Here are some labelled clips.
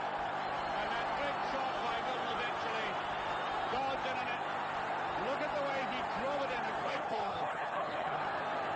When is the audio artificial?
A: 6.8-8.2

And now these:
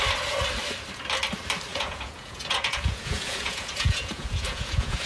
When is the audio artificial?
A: 1.7-5.1

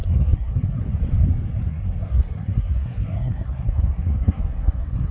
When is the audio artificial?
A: 0.0-0.8; 1.7-5.1

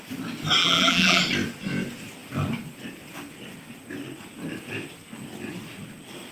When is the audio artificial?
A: 0.6-1.2

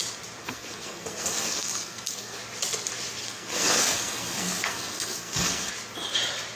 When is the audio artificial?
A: 0.4-2.4; 3.2-5.7

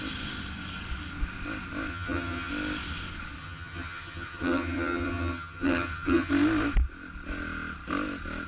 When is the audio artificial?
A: 1.9-2.5; 3.4-6.3